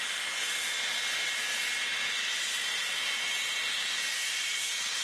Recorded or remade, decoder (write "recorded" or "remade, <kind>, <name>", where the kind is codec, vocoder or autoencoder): recorded